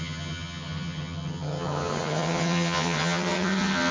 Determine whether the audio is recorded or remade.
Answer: remade